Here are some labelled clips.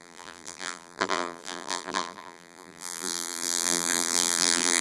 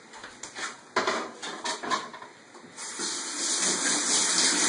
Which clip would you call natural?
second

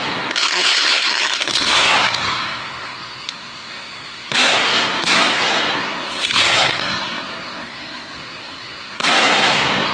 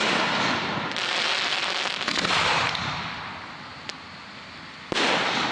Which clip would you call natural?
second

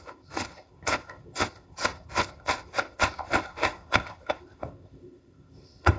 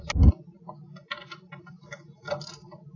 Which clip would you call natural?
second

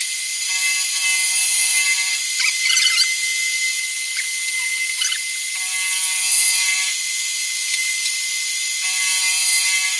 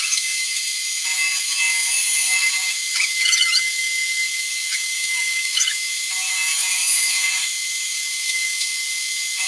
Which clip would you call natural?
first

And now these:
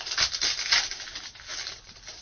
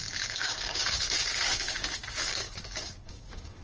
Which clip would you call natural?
first